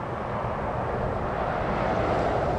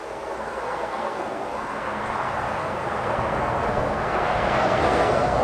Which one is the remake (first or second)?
second